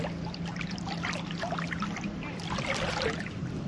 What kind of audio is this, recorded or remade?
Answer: recorded